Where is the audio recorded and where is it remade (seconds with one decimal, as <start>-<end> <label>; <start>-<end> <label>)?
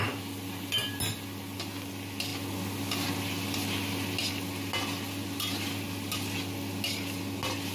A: 0.0-7.7 recorded